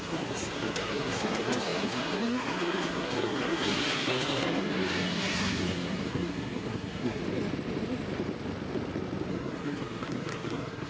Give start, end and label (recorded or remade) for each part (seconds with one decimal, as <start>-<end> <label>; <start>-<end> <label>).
0.0-7.2 remade; 7.2-9.3 recorded; 9.3-10.9 remade

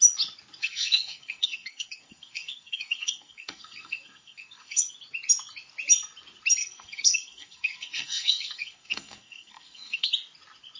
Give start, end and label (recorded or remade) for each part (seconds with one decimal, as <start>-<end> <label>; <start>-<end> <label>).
0.0-0.6 recorded; 0.6-4.9 remade; 4.9-6.6 recorded; 6.6-10.1 remade; 10.1-10.8 recorded

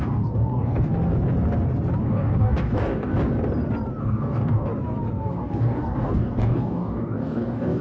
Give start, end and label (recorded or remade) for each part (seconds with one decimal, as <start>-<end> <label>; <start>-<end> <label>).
0.0-0.9 remade; 0.9-2.0 recorded; 2.0-3.1 remade; 3.1-4.0 recorded; 4.0-4.7 remade; 4.7-5.2 recorded; 5.2-7.8 remade

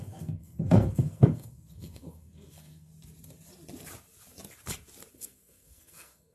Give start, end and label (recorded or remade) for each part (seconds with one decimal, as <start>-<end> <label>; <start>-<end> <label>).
0.0-2.9 remade; 2.9-5.1 recorded; 5.1-6.3 remade

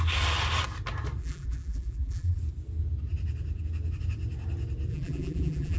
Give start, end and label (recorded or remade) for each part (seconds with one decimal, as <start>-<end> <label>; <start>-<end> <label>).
0.0-1.2 recorded; 1.2-2.4 remade; 2.4-4.9 recorded; 4.9-5.8 remade

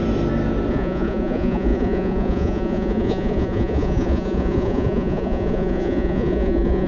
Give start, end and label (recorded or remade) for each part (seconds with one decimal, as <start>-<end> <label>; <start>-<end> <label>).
0.0-0.7 recorded; 0.7-6.9 remade